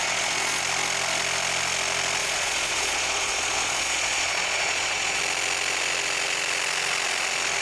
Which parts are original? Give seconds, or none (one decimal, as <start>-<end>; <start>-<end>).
0.6-2.2; 5.2-7.6